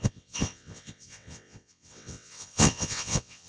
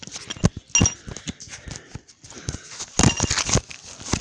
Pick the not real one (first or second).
first